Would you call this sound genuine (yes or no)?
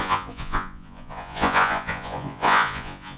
no